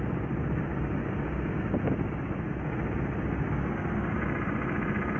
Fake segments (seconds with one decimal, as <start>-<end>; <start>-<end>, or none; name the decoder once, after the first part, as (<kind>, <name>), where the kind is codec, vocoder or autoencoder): none